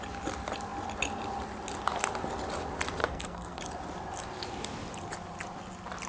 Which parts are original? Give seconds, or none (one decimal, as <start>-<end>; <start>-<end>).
0.0-3.0; 3.6-6.1